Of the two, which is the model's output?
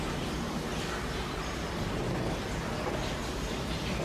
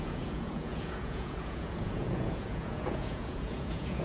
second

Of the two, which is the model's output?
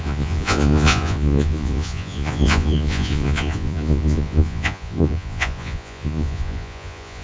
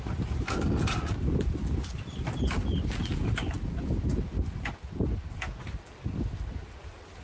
first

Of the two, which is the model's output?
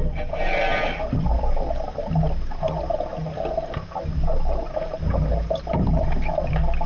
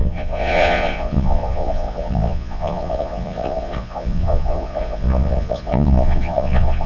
second